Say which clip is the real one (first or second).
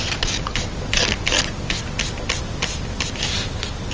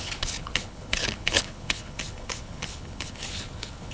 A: first